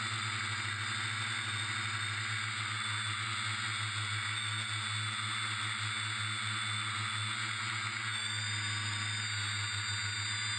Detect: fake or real real